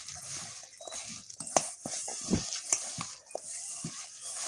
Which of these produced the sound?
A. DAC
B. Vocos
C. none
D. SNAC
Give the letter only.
C